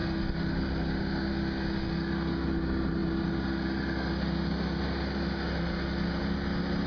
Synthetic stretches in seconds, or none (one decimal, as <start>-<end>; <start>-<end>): none